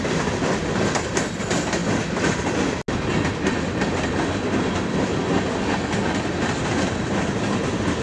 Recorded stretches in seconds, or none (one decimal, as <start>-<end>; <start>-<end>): 0.0-8.0